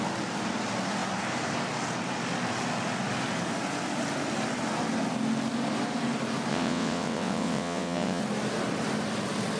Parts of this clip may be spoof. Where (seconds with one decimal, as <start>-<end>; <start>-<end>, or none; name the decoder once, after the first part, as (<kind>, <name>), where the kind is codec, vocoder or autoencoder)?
6.5-8.2 (vocoder, WaveNeXt)

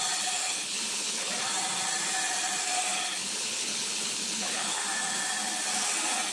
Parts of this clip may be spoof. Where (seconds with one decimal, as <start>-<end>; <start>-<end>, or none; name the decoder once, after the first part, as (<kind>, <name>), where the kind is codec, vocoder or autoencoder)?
0.4-1.3 (codec, HILCodec); 3.2-4.8

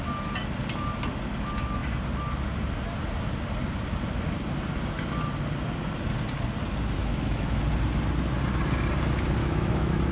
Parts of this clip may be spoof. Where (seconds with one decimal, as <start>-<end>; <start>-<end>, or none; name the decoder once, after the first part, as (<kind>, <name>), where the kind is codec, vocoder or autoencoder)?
7.0-7.6 (autoencoder, DAC-VAE); 9.4-10.1

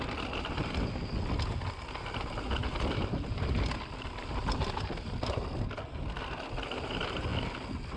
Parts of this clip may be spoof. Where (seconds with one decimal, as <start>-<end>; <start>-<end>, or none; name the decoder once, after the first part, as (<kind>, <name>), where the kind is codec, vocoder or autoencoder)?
none

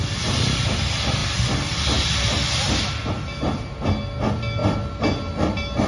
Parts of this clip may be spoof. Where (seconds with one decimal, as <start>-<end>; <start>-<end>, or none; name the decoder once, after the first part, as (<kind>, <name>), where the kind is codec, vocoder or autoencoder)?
none

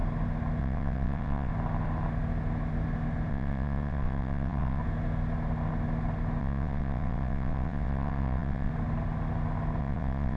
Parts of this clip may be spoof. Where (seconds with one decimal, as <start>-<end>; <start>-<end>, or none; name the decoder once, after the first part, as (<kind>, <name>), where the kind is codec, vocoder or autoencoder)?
0.6-1.5 (vocoder, WaveNeXt); 3.3-4.8; 6.4-8.7; 9.8-10.4

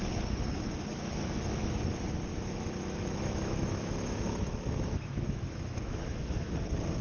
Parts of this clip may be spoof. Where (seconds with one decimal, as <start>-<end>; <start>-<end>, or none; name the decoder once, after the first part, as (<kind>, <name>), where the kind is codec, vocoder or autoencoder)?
0.9-1.7 (autoencoder, DAC-VAE); 2.3-6.5